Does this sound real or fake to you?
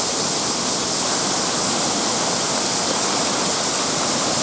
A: real